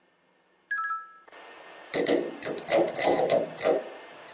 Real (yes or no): yes